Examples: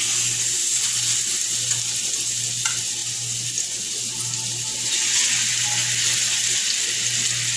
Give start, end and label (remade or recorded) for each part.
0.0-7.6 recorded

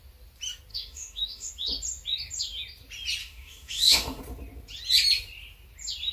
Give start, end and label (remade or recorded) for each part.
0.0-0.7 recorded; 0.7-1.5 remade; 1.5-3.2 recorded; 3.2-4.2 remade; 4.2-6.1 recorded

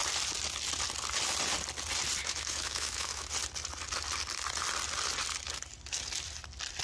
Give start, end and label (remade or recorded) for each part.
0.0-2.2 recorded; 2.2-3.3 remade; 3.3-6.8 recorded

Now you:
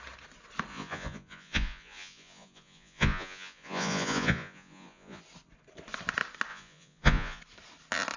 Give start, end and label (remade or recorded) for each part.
0.0-0.7 recorded; 0.7-5.2 remade; 5.2-6.5 recorded; 6.5-7.4 remade; 7.4-8.2 recorded

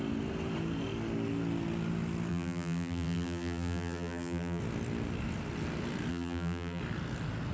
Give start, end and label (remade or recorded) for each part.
0.0-2.3 recorded; 2.3-4.6 remade; 4.6-6.1 recorded; 6.1-6.8 remade; 6.8-7.5 recorded

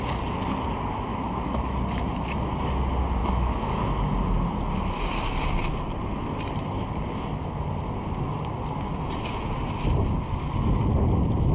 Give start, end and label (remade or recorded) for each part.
0.0-1.1 recorded; 1.1-1.7 remade; 1.7-3.2 recorded; 3.2-3.8 remade; 3.8-11.5 recorded